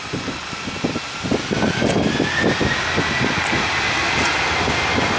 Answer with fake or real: real